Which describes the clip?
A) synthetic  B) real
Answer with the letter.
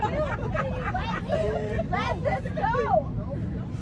B